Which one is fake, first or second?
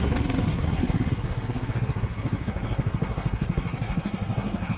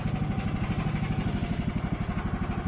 first